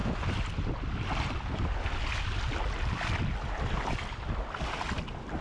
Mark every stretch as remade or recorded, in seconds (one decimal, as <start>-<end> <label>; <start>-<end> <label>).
0.0-5.4 recorded